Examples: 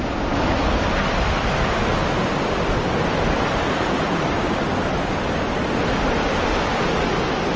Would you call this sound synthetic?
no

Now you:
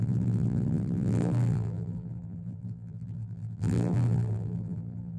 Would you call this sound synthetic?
yes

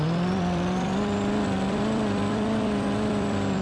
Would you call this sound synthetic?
yes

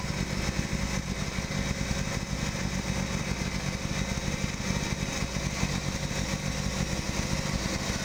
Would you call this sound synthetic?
no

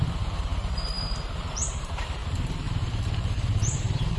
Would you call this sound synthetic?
yes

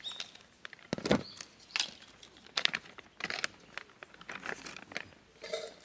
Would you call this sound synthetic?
no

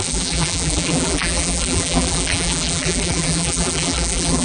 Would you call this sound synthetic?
yes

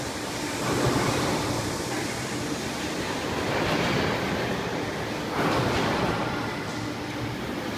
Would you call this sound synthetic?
no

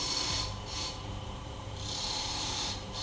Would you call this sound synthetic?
yes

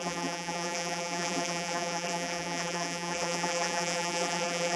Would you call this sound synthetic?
yes